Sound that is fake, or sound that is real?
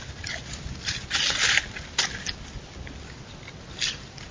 real